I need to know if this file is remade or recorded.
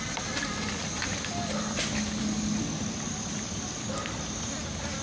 recorded